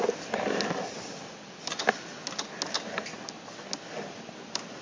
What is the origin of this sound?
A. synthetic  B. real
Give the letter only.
B